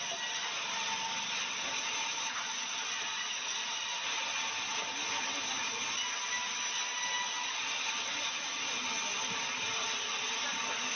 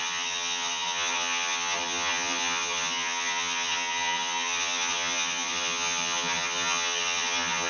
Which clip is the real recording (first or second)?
first